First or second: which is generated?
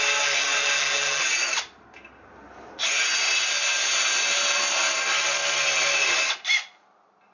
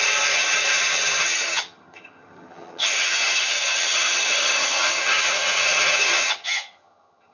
second